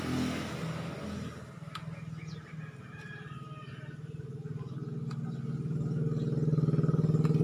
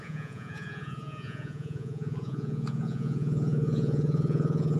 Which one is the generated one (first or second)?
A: second